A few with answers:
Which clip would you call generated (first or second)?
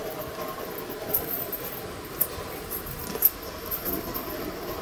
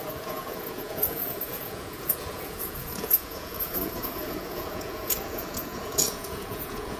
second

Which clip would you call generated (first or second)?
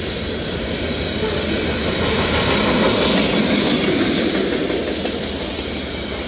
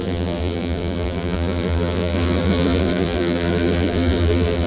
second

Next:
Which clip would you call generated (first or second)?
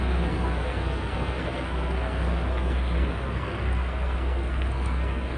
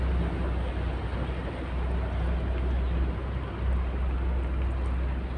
first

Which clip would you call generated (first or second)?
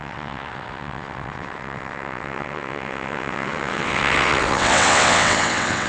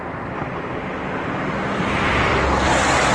first